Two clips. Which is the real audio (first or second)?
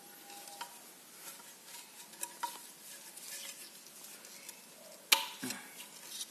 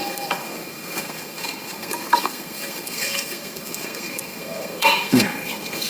first